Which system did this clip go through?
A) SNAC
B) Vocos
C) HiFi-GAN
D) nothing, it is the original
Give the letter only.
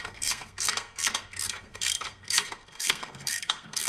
A